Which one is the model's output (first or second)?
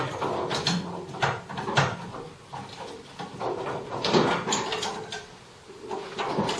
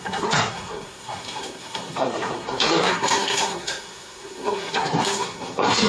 second